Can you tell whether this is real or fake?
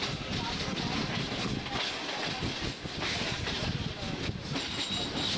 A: real